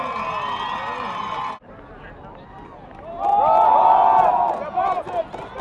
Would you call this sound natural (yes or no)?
yes